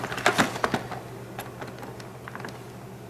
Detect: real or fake real